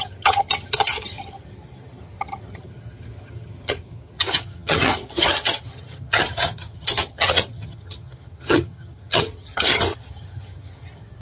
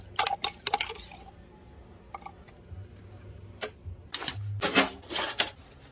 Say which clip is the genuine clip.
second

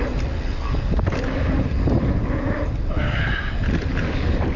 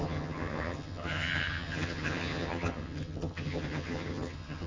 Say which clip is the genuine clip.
first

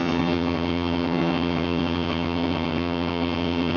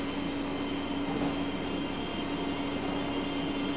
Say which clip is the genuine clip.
second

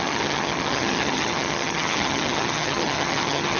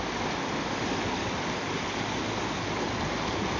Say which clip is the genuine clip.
second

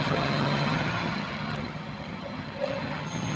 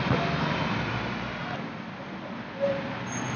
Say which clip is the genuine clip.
second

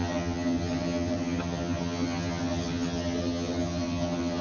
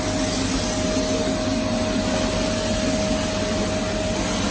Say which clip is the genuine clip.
second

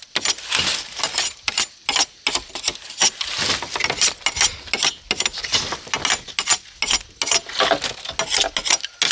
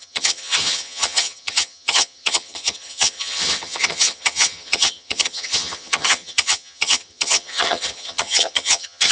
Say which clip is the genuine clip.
first